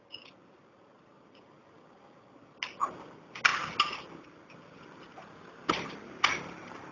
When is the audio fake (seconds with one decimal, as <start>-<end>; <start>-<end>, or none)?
none